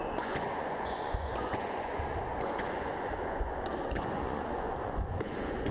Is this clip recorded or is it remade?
remade